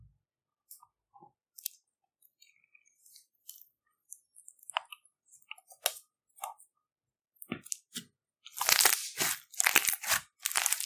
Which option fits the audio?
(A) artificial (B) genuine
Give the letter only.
B